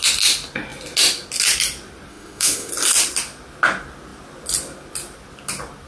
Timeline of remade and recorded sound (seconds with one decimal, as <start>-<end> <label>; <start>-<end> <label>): 0.0-2.1 recorded; 2.1-2.7 remade; 2.7-5.9 recorded

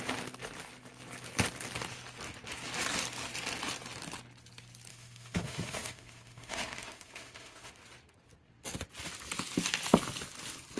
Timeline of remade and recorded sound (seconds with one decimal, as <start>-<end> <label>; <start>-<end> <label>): 0.0-4.9 recorded; 4.9-7.7 remade; 7.7-10.8 recorded